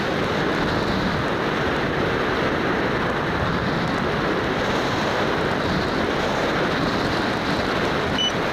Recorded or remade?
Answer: recorded